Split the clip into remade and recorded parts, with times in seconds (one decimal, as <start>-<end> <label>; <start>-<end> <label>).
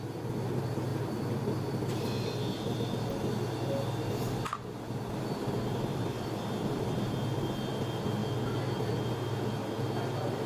0.0-0.9 recorded; 0.9-1.7 remade; 1.7-5.9 recorded; 5.9-7.1 remade; 7.1-10.5 recorded